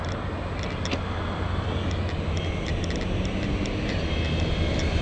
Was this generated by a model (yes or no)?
no